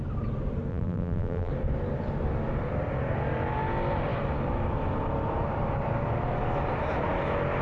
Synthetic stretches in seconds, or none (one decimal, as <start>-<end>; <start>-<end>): 0.7-1.5